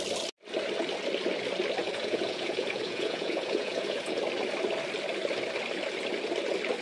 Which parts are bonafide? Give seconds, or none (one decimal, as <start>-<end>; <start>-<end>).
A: 0.0-1.8; 4.2-6.8